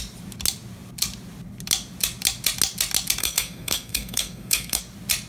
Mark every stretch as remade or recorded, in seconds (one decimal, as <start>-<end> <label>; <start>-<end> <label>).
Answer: 0.0-3.2 recorded; 3.2-4.8 remade; 4.8-5.3 recorded